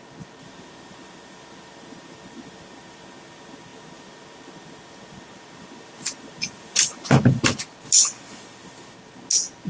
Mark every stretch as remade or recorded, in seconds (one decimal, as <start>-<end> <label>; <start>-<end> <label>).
0.0-9.7 recorded